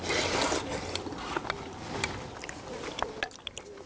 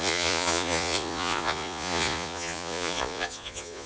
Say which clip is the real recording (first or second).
first